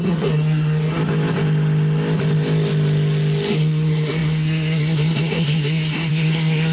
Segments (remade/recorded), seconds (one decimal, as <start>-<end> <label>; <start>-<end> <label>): 0.0-1.0 remade; 1.0-3.5 recorded; 3.5-6.7 remade